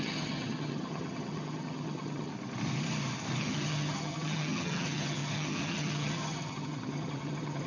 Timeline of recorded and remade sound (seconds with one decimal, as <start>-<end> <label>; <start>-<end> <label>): 0.0-2.3 remade; 2.3-3.4 recorded; 3.4-7.7 remade